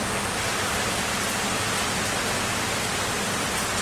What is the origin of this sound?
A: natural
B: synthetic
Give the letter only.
A